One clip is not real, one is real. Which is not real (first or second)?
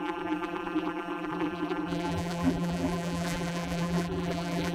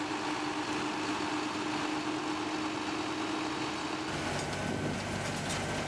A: first